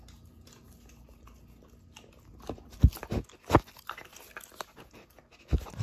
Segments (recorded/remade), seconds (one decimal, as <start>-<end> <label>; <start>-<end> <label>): 0.0-5.8 recorded